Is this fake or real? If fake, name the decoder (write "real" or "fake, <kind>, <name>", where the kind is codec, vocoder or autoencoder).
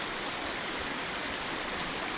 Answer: real